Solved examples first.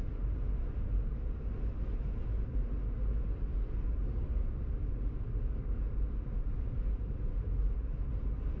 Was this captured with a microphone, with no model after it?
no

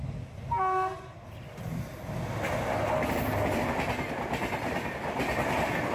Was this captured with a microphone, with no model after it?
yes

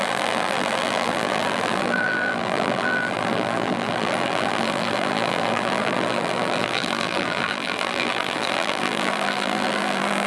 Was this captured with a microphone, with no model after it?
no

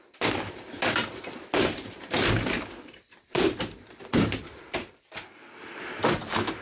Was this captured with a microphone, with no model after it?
no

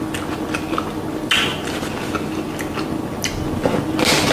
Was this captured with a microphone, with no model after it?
yes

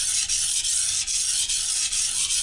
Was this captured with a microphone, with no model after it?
yes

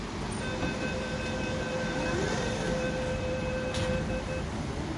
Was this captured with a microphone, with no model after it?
yes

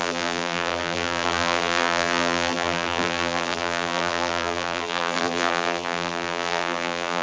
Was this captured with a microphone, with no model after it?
no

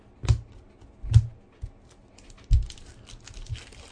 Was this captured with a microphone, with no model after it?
yes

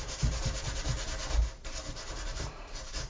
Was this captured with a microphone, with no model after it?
no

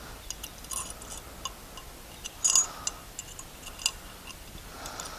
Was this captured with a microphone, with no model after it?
yes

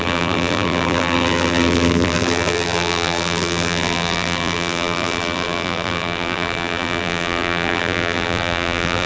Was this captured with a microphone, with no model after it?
no